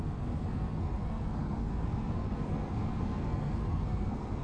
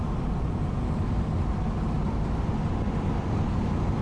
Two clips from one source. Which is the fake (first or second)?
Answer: first